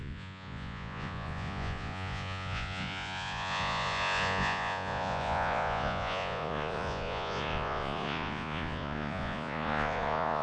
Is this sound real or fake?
fake